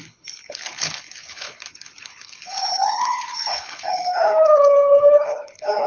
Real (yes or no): no